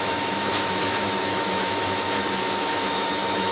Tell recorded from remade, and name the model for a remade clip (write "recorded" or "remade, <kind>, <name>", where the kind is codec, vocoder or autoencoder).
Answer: remade, autoencoder, DAC-VAE